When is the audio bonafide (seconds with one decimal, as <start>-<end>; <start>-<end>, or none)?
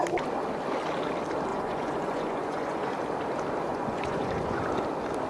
0.0-1.5; 2.9-3.7; 4.6-5.3